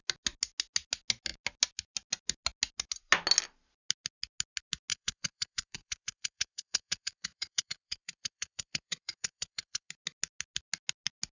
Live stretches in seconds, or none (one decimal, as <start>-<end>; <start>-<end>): 0.0-4.9; 9.9-11.3